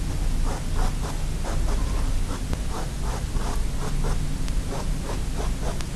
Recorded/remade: recorded